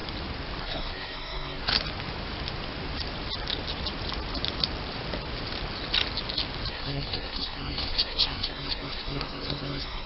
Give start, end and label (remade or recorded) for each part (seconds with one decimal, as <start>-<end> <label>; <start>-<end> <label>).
0.0-0.6 recorded; 0.6-1.7 remade; 1.7-6.7 recorded; 6.7-10.1 remade